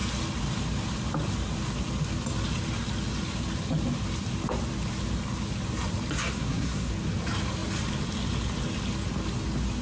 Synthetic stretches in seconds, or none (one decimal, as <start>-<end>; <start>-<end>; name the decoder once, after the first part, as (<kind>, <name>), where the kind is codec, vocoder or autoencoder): 6.3-6.9 (codec, SNAC)